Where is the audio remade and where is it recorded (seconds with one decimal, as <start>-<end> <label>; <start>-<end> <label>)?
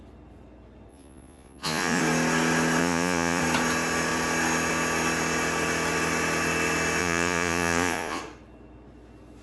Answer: 0.0-0.9 recorded; 0.9-2.0 remade; 2.0-2.8 recorded; 2.8-3.4 remade; 3.4-7.0 recorded; 7.0-8.2 remade; 8.2-9.4 recorded